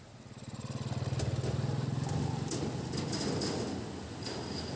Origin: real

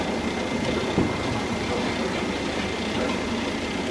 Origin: fake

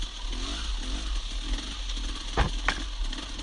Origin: real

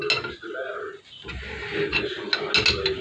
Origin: real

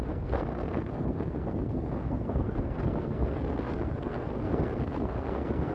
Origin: fake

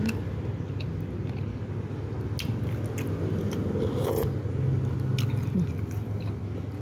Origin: real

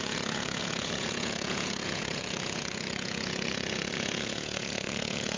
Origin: fake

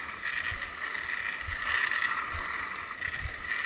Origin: real